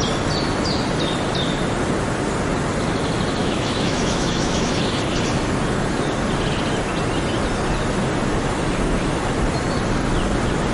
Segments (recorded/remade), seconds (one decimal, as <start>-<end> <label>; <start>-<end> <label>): 0.0-3.4 recorded; 3.4-4.7 remade; 4.7-10.7 recorded